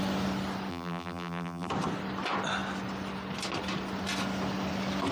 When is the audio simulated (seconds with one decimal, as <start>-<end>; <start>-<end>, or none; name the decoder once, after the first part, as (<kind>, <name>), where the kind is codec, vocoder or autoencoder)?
0.7-1.7 (vocoder, BigVGAN v2)